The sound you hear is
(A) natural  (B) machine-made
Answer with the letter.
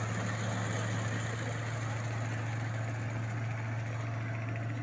A